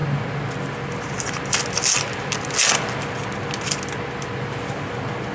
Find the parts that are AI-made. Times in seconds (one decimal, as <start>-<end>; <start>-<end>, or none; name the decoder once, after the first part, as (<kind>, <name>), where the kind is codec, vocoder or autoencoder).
none